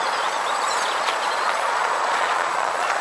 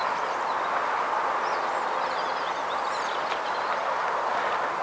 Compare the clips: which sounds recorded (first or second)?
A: second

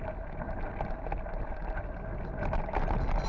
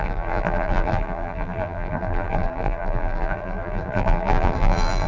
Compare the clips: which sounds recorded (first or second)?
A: first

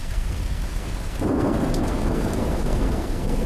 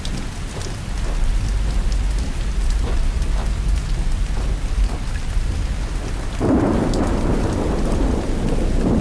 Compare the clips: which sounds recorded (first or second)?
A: second